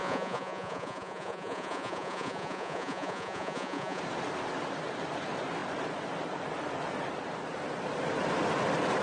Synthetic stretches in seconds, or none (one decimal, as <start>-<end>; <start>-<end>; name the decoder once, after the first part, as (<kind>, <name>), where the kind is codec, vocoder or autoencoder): 0.0-4.0 (vocoder, Vocos)